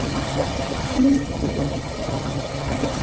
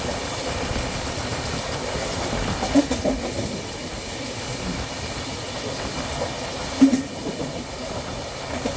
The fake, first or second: first